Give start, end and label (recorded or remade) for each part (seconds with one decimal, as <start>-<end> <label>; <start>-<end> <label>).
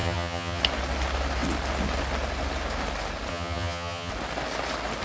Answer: 0.0-0.6 remade; 0.6-3.3 recorded; 3.3-4.1 remade; 4.1-5.0 recorded